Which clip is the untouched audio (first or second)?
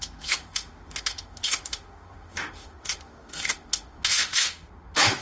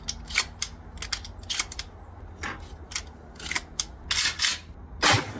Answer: second